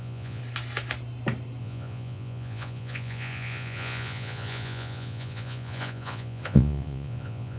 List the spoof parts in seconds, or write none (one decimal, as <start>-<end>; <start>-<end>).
0.0-0.4; 1.6-7.6